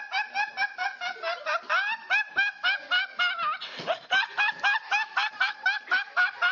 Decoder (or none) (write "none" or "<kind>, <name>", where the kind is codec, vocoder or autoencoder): none